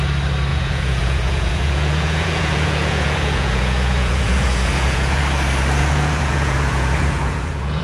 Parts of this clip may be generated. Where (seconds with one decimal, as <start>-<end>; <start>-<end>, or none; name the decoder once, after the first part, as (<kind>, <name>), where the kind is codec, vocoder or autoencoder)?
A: 0.5-5.2 (vocoder, Vocos); 5.8-7.8